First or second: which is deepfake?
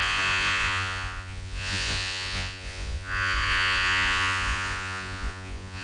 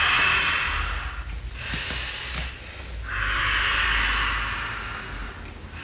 first